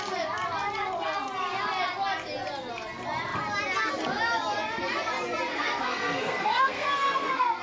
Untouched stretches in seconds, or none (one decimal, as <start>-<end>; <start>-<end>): 0.0-5.5

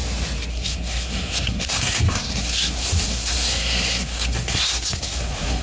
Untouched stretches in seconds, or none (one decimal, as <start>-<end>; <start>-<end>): 0.0-0.5

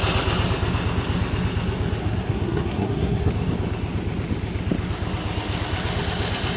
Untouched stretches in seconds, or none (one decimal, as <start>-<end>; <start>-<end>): 0.0-2.0; 3.3-6.6

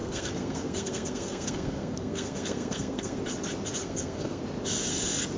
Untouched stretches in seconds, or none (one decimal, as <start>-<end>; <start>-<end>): 3.2-3.8; 4.4-5.4

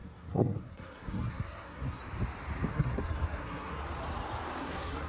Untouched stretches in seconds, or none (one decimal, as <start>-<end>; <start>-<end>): 2.0-2.7; 3.8-4.6

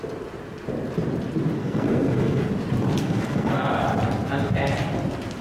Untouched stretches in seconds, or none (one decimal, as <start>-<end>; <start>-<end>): 0.0-1.6; 2.5-3.0; 3.7-5.4

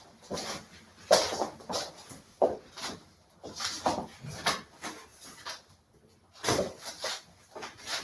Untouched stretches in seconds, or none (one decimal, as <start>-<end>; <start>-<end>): 0.0-8.0

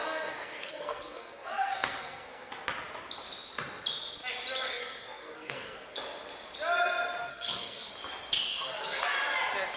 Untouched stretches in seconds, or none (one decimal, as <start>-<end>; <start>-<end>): 2.5-4.7; 6.0-7.3; 7.9-8.4; 9.0-9.8